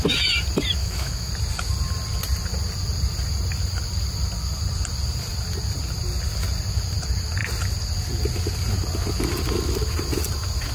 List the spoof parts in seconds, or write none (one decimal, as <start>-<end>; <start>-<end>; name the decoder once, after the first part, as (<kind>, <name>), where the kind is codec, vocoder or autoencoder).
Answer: 0.8-1.3 (autoencoder, DAC-VAE)